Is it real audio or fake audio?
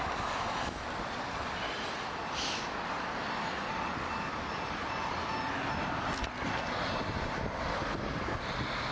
fake